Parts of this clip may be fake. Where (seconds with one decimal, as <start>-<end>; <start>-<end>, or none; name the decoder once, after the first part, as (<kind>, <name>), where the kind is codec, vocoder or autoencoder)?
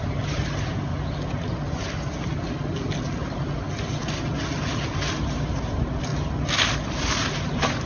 0.0-0.9 (vocoder, BigVGAN v2); 5.2-6.1; 6.9-7.9